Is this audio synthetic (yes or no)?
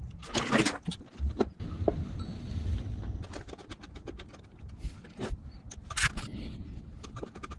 no